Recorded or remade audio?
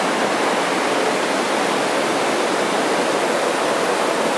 recorded